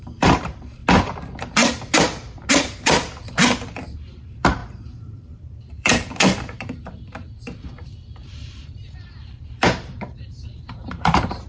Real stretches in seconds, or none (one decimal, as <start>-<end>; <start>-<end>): 0.8-2.5